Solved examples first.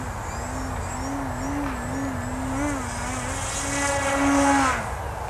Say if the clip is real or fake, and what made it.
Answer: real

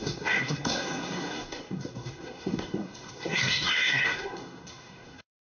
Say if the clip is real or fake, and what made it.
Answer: fake, codec, SNAC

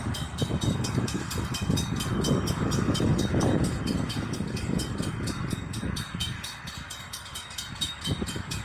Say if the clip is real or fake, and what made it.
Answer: fake, codec, DAC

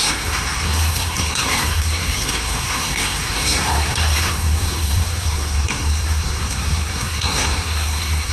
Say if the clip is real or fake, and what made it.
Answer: fake, codec, SNAC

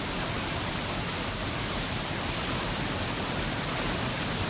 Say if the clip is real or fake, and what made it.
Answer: real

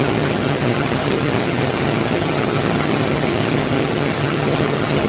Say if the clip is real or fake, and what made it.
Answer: fake, vocoder, HiFi-GAN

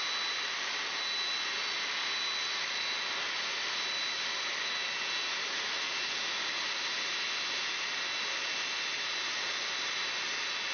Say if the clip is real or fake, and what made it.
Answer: real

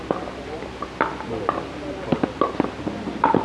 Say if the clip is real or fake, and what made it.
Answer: real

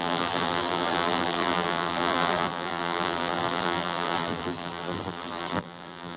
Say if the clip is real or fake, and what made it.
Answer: fake, vocoder, BigVGAN v2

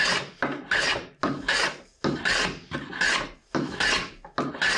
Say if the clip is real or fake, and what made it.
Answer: real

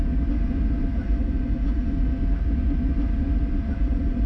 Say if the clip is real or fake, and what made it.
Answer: real